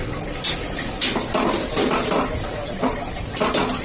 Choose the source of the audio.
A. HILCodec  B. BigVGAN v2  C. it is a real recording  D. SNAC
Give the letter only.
C